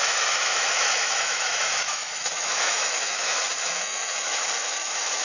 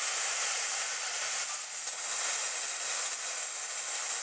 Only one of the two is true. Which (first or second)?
second